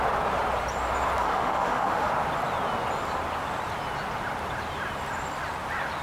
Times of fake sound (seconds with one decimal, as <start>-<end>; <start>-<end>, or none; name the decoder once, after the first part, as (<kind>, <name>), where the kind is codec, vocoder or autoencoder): 1.2-2.1 (autoencoder, DAC-VAE)